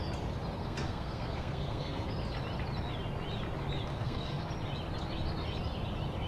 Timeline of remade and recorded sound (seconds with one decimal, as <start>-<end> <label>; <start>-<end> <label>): 0.0-0.6 recorded; 0.6-2.1 remade; 2.1-3.9 recorded; 3.9-4.5 remade; 4.5-6.3 recorded